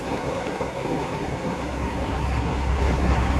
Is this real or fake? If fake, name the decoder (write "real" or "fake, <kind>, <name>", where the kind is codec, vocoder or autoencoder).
fake, codec, SNAC